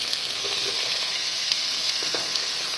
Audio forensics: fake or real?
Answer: fake